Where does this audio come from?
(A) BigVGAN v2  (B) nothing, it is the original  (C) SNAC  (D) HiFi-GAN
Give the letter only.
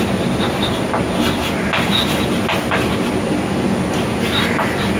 B